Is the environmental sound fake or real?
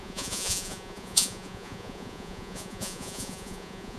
fake